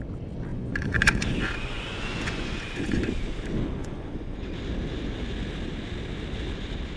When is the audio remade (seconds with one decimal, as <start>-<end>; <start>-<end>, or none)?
0.5-3.0; 3.8-4.4